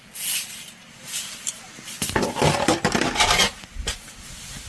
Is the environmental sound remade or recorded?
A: recorded